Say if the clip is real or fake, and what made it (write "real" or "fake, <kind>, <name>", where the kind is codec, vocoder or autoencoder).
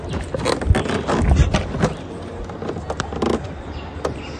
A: real